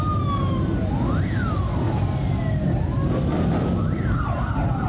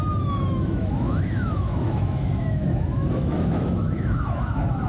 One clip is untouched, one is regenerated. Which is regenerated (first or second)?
second